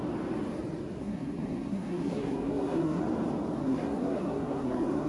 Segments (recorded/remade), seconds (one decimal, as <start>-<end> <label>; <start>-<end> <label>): 0.0-1.0 recorded; 1.0-3.0 remade; 3.0-3.6 recorded; 3.6-5.1 remade